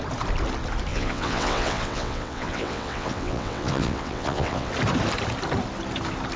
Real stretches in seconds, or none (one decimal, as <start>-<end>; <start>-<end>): 0.0-0.9; 4.7-6.4